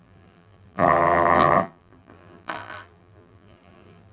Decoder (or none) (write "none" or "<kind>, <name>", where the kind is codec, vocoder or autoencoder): vocoder, BigVGAN v2